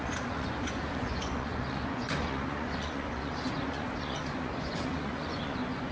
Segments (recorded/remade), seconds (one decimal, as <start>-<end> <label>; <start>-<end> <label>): 0.0-5.9 remade